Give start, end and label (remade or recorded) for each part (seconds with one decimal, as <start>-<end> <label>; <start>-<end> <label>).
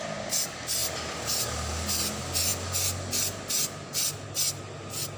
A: 0.0-5.2 recorded